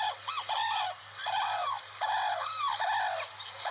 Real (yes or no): yes